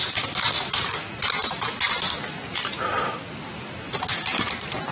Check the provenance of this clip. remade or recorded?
remade